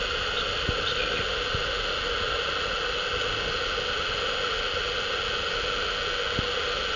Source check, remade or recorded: recorded